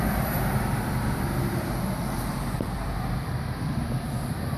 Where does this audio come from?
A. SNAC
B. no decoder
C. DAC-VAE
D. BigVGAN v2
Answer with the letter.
D